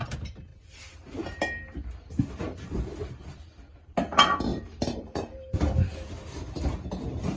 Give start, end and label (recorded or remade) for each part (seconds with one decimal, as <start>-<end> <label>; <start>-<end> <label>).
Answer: 0.0-4.5 recorded; 4.5-5.5 remade; 5.5-7.4 recorded

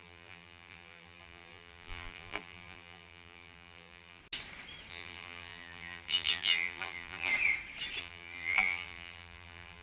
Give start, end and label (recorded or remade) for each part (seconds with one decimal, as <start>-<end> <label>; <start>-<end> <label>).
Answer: 0.0-4.2 remade; 4.2-4.9 recorded; 4.9-7.3 remade; 7.3-8.0 recorded; 8.0-9.8 remade

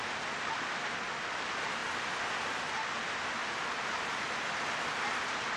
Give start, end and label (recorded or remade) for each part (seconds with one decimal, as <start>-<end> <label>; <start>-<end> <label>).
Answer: 0.0-1.8 recorded; 1.8-2.3 remade; 2.3-5.6 recorded

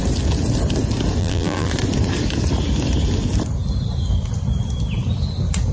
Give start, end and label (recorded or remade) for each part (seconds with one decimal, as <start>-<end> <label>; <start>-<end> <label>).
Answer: 0.0-1.2 recorded; 1.2-1.7 remade; 1.7-5.7 recorded